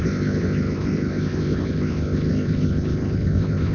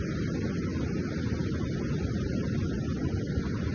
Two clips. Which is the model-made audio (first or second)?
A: first